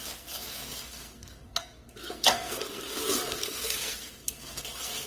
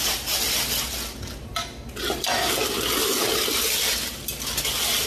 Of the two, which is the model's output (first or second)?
first